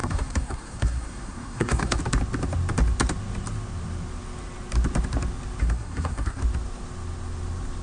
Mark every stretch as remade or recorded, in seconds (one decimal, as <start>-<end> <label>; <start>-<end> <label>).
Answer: 0.0-2.0 remade; 2.0-5.6 recorded; 5.6-6.4 remade; 6.4-7.8 recorded